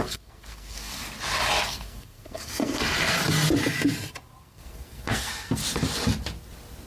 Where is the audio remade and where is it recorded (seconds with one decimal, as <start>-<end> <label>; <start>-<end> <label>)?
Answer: 0.0-1.0 remade; 1.0-1.6 recorded; 1.6-3.2 remade; 3.2-4.4 recorded; 4.4-5.6 remade; 5.6-6.9 recorded